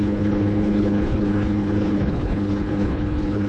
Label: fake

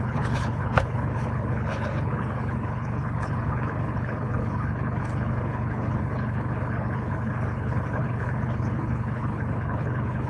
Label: fake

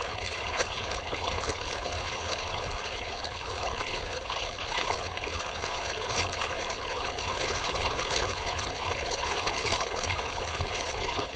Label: fake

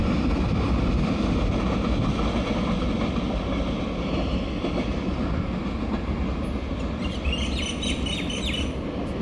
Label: real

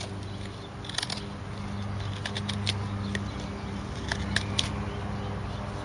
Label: real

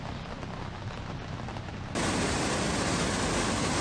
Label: real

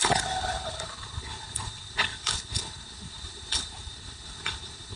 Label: fake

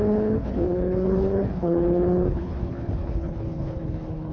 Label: fake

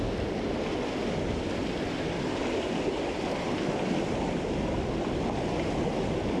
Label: real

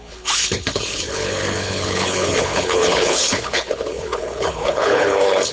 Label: fake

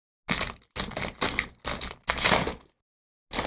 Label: real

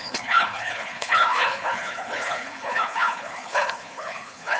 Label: fake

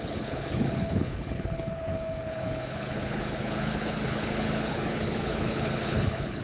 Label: fake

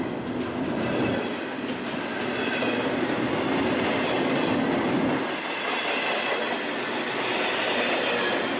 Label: real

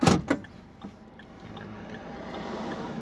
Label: real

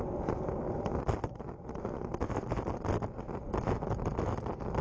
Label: real